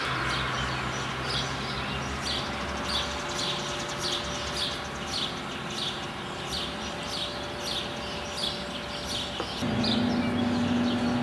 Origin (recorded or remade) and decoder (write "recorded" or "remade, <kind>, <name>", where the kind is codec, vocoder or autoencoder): recorded